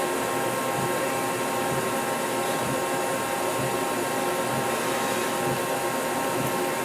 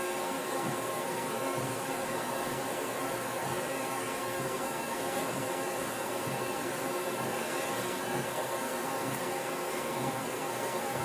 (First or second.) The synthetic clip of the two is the second